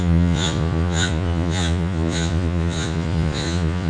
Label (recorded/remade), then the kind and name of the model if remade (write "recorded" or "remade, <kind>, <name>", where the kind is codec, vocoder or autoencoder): remade, vocoder, Vocos